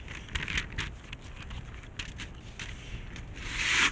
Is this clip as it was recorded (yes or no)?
yes